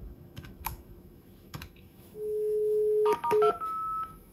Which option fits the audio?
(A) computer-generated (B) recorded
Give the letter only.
A